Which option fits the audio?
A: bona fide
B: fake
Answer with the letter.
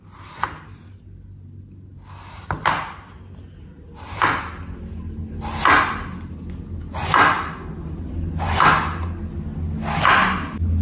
A